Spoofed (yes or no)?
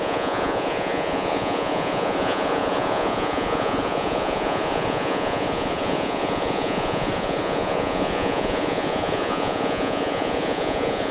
yes